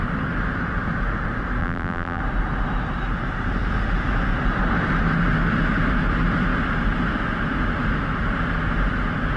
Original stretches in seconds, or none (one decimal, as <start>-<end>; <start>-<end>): 0.0-1.6; 2.2-9.4